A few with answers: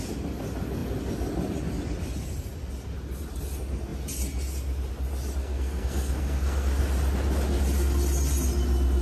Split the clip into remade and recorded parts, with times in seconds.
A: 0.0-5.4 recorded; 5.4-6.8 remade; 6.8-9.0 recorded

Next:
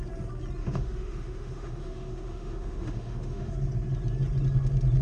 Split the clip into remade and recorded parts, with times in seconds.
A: 0.0-0.6 recorded; 0.6-3.5 remade; 3.5-5.0 recorded

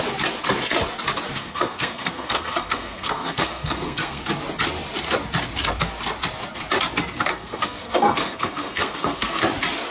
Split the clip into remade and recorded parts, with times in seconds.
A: 0.0-1.4 recorded; 1.4-4.2 remade; 4.2-7.3 recorded; 7.3-9.4 remade; 9.4-9.9 recorded

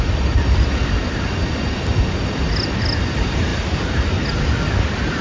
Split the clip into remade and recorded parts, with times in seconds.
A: 0.0-5.2 recorded

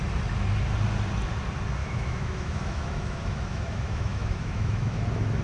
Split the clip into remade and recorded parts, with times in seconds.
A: 0.0-1.8 recorded; 1.8-5.0 remade; 5.0-5.4 recorded